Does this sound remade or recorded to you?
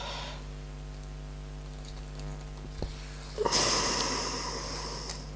recorded